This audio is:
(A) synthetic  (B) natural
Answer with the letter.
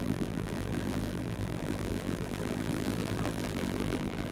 A